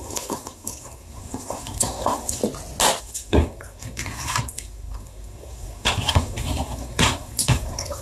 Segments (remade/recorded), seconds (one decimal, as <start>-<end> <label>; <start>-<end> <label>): 0.0-2.4 remade; 2.4-3.0 recorded; 3.0-8.0 remade